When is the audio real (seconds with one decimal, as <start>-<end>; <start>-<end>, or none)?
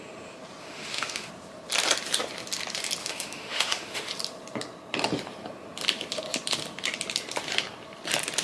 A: 0.0-0.6; 1.3-3.0; 4.1-8.4